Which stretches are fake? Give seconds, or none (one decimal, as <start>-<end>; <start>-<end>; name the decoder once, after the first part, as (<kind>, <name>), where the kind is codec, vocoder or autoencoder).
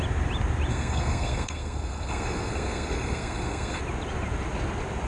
0.7-3.8 (codec, SNAC)